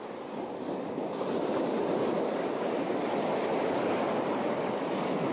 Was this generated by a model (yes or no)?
no